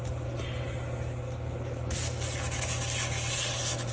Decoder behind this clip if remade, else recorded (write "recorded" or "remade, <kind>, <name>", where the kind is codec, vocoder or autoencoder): recorded